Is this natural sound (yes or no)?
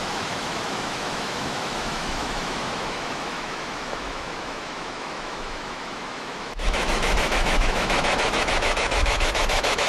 no